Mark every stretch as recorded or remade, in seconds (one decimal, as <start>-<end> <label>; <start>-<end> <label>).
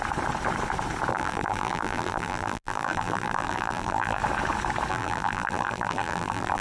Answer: 0.0-1.1 recorded; 1.1-4.2 remade; 4.2-4.9 recorded; 4.9-6.6 remade